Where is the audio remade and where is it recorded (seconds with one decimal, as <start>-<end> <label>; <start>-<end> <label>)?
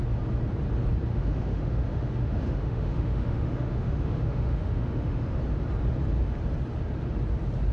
0.0-1.1 recorded; 1.1-5.4 remade; 5.4-7.7 recorded